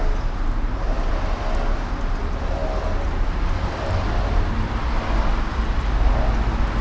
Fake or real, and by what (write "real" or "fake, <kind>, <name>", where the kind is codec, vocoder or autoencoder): real